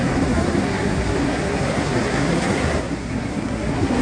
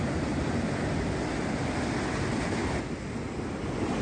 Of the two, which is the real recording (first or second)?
second